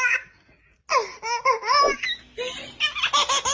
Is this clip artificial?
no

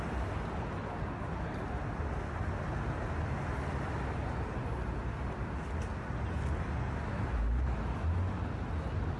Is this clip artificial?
no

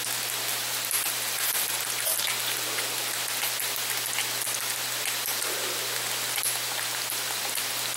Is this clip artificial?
no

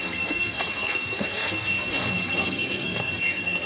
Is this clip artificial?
yes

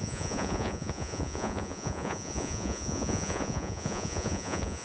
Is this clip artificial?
yes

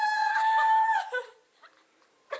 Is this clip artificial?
yes